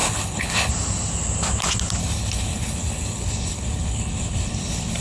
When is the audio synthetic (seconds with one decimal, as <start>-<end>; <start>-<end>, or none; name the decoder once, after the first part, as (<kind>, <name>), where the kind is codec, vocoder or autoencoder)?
0.0-0.7 (codec, HILCodec); 2.0-5.0